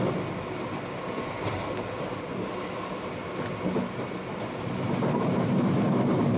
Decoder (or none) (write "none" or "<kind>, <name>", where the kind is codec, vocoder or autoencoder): none